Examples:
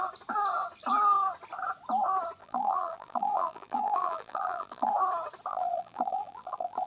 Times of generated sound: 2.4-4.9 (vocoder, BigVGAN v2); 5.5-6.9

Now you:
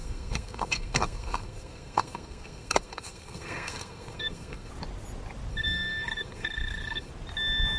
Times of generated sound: 0.0-4.7 (codec, SNAC); 5.5-7.1

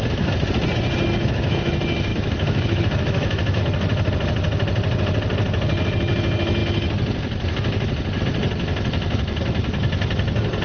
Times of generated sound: 2.1-3.6 (autoencoder, DAC-VAE)

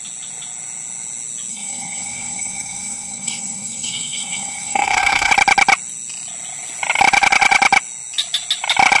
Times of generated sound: 1.5-5.3 (codec, SNAC)